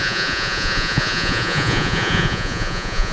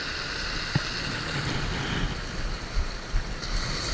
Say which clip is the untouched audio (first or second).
second